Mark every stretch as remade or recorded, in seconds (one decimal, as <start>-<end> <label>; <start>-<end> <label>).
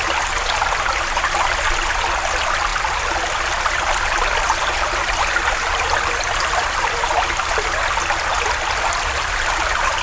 0.0-10.0 recorded